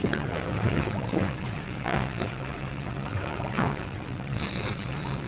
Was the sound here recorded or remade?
remade